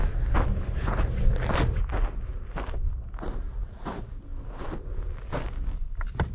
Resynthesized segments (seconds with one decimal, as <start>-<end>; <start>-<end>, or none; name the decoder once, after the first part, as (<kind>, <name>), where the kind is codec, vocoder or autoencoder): 3.8-4.3 (vocoder, BigVGAN v2); 5.5-6.3